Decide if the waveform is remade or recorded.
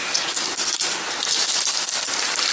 recorded